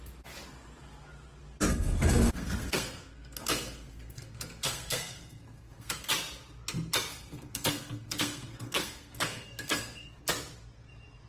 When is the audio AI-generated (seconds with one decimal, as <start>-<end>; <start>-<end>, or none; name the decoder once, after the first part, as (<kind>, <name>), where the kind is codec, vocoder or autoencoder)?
1.7-6.1 (codec, SNAC); 7.1-10.2

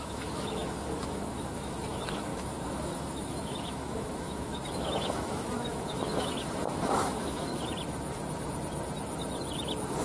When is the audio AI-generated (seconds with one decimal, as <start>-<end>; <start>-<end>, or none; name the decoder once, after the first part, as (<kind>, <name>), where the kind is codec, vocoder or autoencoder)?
0.0-7.5 (autoencoder, DAC-VAE)

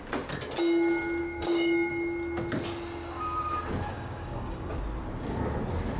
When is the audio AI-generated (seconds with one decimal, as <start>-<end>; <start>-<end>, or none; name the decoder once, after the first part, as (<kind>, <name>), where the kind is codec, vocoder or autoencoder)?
1.2-1.9 (codec, DAC); 3.9-4.7

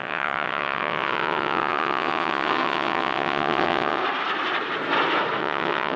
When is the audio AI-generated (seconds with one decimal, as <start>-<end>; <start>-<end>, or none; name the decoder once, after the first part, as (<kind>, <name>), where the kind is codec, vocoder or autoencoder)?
0.0-4.0 (vocoder, WaveNeXt); 5.4-6.0